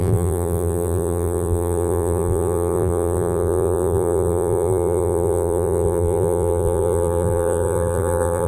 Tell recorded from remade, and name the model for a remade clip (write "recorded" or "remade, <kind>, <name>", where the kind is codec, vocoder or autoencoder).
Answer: remade, vocoder, BigVGAN v2